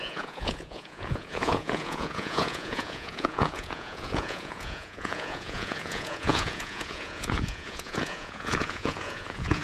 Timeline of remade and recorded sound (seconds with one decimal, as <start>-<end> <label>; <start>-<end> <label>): 0.0-9.6 remade